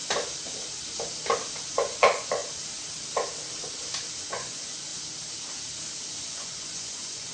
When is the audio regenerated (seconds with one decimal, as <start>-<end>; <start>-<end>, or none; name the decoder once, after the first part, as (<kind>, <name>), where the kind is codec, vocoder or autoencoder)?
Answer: 1.7-2.4 (vocoder, Vocos); 4.2-4.9; 6.1-7.3